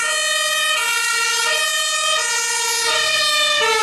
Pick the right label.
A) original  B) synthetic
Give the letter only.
A